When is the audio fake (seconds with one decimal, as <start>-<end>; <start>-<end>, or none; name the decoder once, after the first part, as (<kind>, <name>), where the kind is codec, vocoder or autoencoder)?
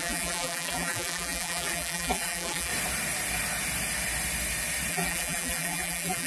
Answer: 0.0-2.7 (vocoder, BigVGAN v2); 4.9-6.3